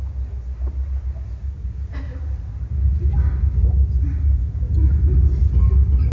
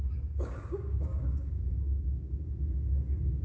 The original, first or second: first